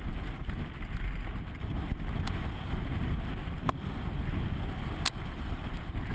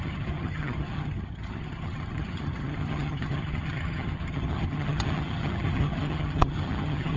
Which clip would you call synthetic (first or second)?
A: second